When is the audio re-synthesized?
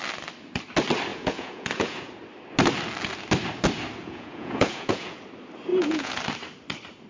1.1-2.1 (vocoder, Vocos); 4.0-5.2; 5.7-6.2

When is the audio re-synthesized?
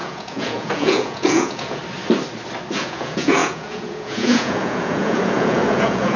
0.0-1.8 (vocoder, Vocos); 2.7-6.2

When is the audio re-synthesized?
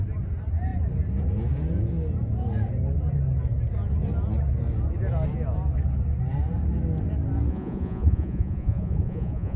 7.5-9.6 (vocoder, Vocos)